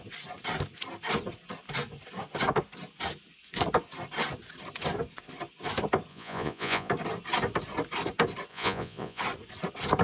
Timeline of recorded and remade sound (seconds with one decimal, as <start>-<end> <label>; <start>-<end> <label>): 0.0-6.1 recorded; 6.1-6.9 remade; 6.9-8.5 recorded; 8.5-9.2 remade; 9.2-10.0 recorded